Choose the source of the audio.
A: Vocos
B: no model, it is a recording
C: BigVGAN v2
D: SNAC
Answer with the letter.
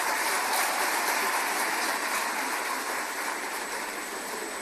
C